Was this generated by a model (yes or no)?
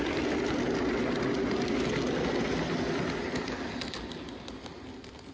no